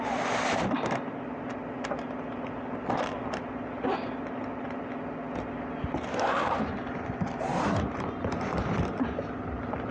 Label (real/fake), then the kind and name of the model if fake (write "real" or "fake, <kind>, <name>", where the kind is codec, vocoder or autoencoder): real